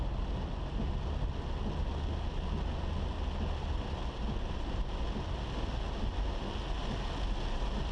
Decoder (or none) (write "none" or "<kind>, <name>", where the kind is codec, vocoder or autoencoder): none